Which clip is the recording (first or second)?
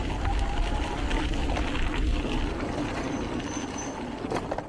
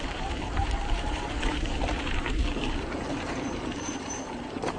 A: first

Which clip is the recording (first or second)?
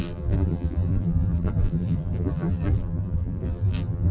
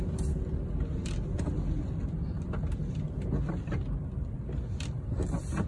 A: second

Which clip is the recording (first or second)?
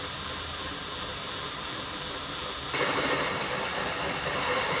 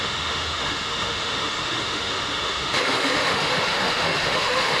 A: first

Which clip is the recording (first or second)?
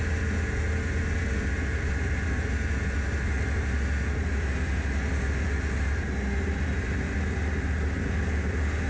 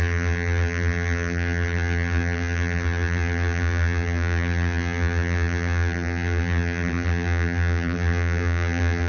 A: first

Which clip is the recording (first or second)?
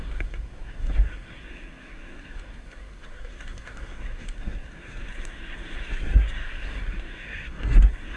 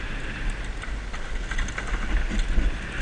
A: second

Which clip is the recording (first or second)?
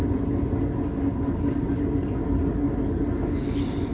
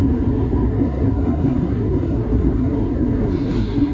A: first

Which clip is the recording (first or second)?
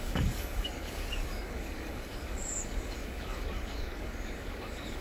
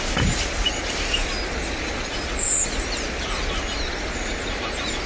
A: second